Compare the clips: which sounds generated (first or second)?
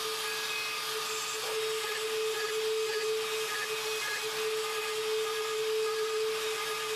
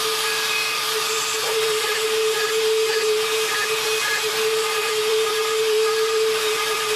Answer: second